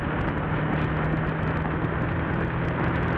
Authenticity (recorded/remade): recorded